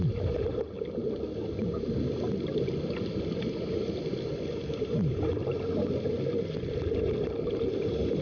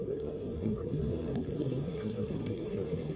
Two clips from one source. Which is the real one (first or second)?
first